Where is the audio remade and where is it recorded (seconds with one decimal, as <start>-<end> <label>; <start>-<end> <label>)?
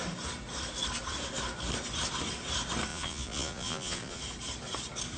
0.0-2.9 recorded; 2.9-4.2 remade; 4.2-5.2 recorded